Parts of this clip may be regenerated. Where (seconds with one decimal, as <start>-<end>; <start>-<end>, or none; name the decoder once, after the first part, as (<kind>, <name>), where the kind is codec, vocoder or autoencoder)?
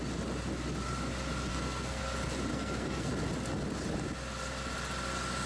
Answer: 1.5-2.0 (codec, SNAC); 2.5-3.1